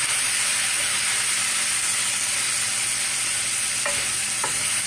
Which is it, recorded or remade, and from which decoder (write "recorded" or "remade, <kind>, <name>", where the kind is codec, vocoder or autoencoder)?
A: recorded